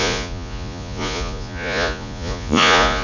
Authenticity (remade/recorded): remade